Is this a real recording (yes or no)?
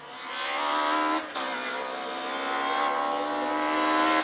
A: yes